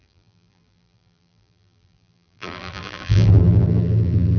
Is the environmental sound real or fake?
fake